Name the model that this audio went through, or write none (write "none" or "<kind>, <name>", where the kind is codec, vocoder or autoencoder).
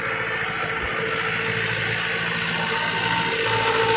none